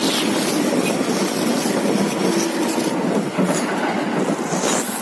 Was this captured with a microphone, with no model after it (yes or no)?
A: yes